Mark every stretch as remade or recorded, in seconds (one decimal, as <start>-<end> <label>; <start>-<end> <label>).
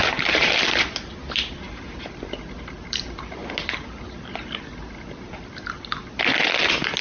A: 0.0-1.2 remade; 1.2-2.6 recorded; 2.6-3.4 remade; 3.4-7.0 recorded